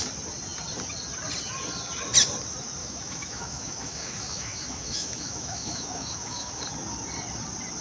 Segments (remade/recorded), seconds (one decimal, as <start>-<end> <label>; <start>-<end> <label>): 0.0-2.8 recorded; 2.8-6.6 remade; 6.6-7.8 recorded